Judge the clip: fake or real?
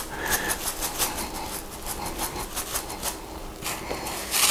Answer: real